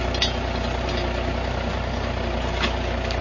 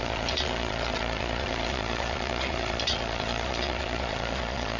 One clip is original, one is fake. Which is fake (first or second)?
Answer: second